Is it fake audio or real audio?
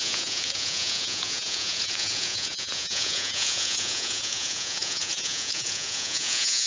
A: fake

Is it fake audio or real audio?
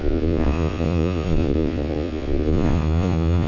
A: fake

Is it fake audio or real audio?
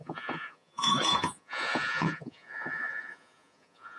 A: fake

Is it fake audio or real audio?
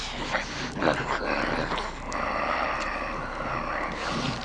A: real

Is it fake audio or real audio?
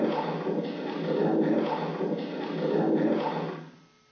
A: real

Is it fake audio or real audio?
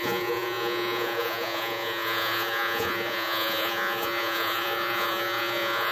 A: fake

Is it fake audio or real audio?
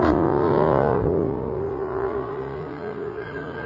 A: fake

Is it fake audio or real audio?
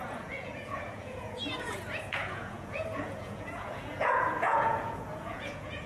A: fake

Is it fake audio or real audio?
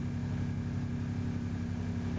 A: real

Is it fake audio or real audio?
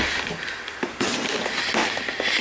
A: real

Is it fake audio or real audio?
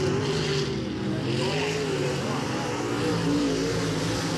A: real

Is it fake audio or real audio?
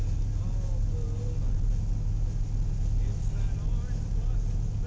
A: real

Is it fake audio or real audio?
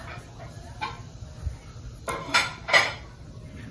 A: real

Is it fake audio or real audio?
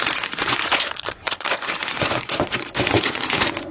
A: fake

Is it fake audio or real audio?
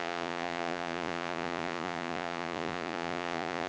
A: fake